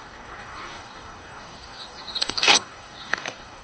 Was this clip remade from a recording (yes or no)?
yes